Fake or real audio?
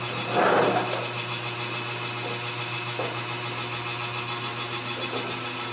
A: real